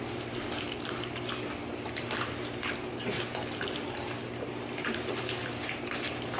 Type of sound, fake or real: real